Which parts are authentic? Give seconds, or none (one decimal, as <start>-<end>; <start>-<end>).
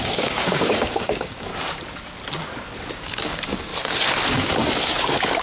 1.5-2.9; 3.7-4.3